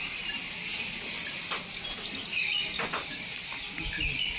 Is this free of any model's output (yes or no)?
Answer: yes